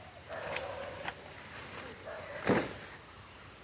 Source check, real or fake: real